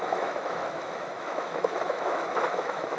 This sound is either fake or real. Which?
fake